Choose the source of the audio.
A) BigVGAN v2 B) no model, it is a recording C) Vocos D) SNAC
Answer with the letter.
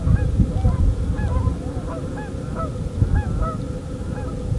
B